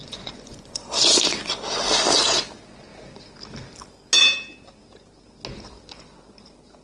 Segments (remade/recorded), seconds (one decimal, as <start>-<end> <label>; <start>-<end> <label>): 0.0-1.2 remade; 1.2-6.8 recorded